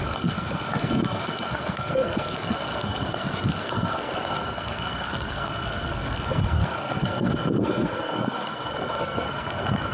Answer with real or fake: fake